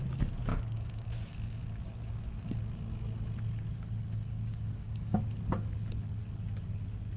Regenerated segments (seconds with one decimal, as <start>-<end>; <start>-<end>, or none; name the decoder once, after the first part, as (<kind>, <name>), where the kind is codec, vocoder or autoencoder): 0.5-1.6 (codec, DAC); 4.5-5.2